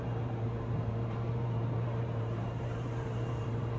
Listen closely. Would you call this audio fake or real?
fake